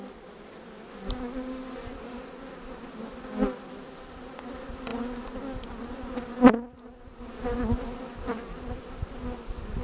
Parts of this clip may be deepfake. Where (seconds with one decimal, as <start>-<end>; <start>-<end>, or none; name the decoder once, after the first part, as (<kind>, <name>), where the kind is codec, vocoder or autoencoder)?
none